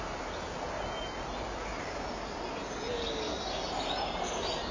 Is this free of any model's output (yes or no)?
yes